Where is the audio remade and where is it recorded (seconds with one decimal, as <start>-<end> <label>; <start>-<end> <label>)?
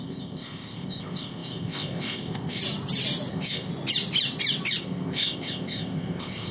0.0-2.6 remade; 2.6-3.3 recorded; 3.3-3.7 remade; 3.7-4.8 recorded; 4.8-6.5 remade